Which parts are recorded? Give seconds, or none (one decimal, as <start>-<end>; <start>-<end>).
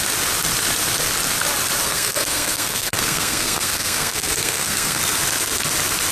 0.0-1.8; 5.0-6.1